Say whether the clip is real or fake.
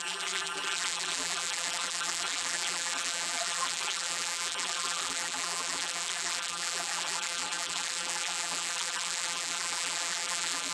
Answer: fake